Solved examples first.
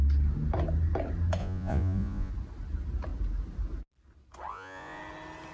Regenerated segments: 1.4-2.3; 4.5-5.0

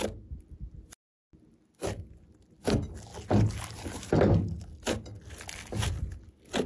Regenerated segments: none

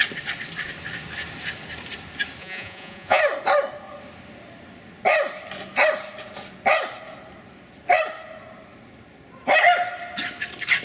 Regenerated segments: 2.4-3.2

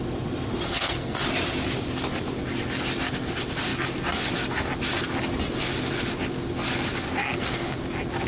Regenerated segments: 0.5-1.2; 7.2-7.8